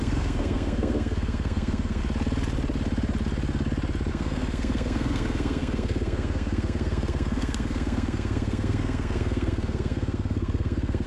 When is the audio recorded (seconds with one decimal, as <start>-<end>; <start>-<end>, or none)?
2.0-4.1